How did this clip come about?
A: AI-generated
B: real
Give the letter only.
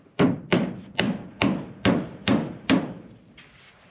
B